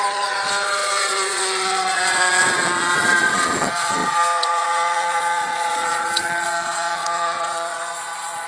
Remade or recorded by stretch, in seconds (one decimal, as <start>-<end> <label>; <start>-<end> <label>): 0.0-8.5 remade